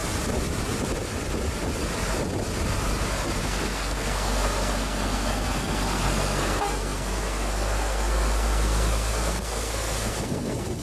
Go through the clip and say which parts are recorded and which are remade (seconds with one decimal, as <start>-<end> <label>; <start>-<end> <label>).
0.0-3.4 recorded; 3.4-10.8 remade